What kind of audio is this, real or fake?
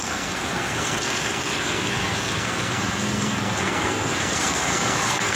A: fake